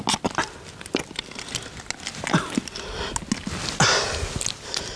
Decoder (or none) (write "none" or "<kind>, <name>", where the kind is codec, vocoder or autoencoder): none